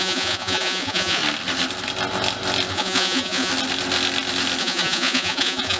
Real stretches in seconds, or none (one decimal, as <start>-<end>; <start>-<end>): 1.2-2.7; 3.5-4.6